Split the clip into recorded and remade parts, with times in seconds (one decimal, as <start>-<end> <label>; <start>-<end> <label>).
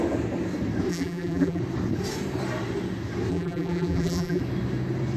0.0-0.9 recorded; 0.9-1.6 remade; 1.6-3.3 recorded; 3.3-4.4 remade; 4.4-5.2 recorded